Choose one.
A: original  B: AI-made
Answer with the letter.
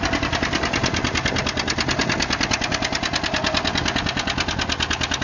A